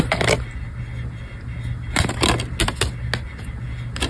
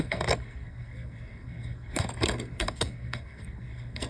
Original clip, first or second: first